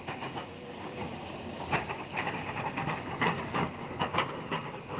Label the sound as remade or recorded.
remade